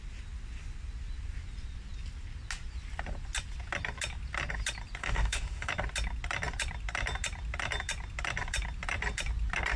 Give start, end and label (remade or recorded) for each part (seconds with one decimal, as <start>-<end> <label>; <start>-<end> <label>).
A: 0.0-5.0 recorded; 5.0-5.7 remade; 5.7-9.8 recorded